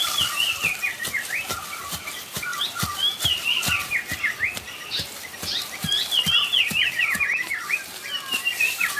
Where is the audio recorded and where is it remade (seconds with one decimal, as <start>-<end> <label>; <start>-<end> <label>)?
0.0-9.0 recorded